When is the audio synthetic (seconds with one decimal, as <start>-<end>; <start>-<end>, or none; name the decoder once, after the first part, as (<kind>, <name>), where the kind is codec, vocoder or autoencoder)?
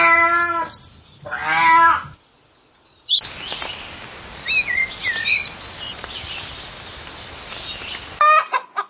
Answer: none